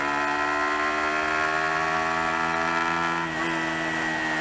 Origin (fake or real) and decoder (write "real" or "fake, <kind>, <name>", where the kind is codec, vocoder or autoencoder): real